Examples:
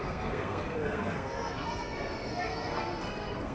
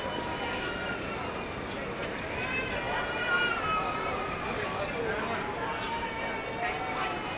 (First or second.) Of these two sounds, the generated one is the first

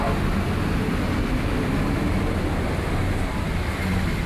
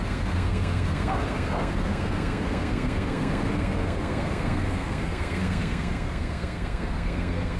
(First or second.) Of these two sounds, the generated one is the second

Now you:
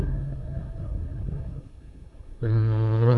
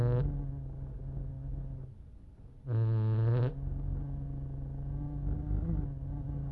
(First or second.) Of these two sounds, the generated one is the first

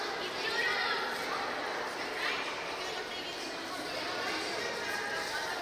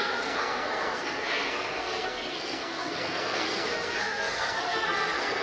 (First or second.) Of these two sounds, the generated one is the second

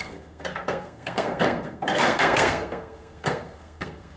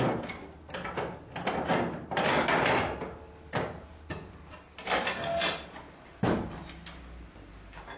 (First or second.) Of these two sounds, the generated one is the first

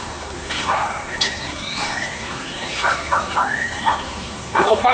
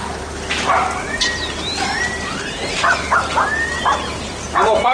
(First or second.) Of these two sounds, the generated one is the first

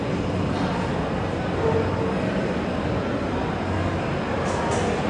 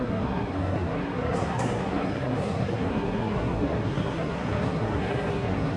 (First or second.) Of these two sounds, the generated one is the second